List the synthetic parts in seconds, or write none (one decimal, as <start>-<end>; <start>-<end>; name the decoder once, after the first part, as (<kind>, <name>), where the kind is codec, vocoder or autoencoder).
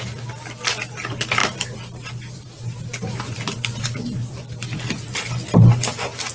1.4-5.2 (vocoder, BigVGAN v2)